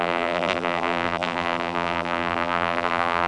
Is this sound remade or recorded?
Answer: remade